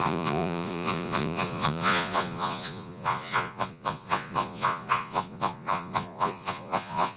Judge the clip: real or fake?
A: fake